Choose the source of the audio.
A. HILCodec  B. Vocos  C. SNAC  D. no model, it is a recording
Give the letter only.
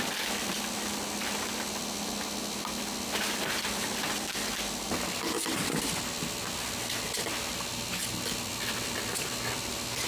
D